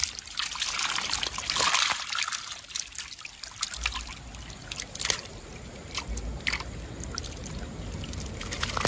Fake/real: real